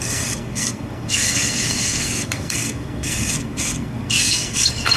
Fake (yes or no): yes